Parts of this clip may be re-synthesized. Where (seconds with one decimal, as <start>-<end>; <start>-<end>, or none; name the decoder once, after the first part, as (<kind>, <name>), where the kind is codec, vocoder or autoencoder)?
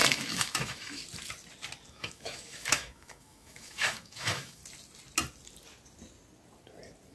0.0-1.0 (autoencoder, DAC-VAE); 1.9-4.6